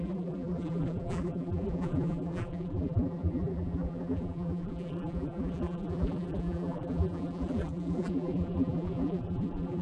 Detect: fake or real fake